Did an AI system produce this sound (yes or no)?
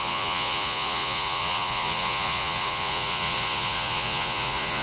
yes